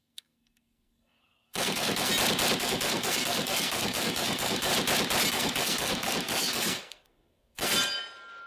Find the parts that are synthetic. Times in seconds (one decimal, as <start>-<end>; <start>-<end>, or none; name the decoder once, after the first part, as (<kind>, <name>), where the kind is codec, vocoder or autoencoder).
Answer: 0.0-2.1 (codec, SNAC); 2.6-4.7; 5.3-7.7